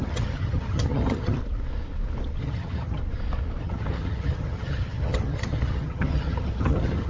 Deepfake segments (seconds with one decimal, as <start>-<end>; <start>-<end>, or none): 0.0-1.4; 2.4-3.0; 3.6-7.1